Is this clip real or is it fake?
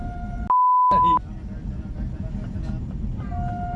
real